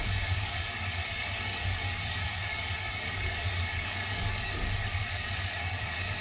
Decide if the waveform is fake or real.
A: fake